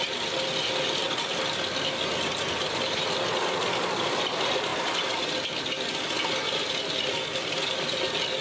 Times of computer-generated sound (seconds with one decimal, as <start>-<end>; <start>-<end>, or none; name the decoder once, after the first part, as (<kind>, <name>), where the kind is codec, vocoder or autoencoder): none